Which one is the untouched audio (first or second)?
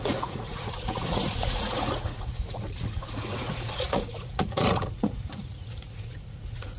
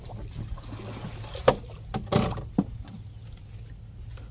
second